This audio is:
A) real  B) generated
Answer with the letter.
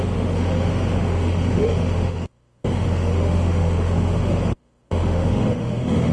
B